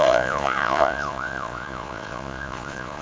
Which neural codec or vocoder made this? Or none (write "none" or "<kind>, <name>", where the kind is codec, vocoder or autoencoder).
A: vocoder, Vocos